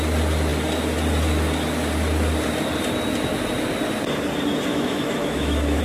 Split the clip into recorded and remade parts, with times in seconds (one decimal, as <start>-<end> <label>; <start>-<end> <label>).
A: 0.0-4.7 recorded; 4.7-5.8 remade